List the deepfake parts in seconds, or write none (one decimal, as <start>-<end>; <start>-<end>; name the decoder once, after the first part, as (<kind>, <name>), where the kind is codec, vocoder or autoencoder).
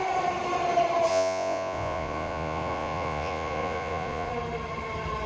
1.1-4.3 (vocoder, Vocos)